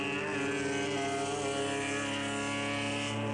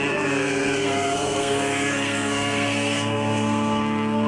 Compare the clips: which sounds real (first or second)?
first